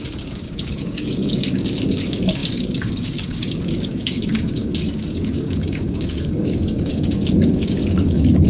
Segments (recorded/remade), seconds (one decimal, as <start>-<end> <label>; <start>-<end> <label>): 0.0-8.5 remade